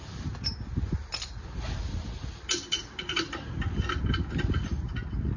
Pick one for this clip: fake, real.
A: real